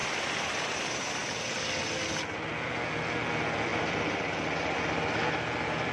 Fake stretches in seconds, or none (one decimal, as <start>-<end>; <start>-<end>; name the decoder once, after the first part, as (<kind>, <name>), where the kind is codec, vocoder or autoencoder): 0.0-1.2 (vocoder, BigVGAN v2); 2.9-5.9